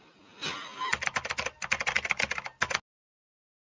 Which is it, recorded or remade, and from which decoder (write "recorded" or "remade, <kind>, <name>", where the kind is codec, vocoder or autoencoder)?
recorded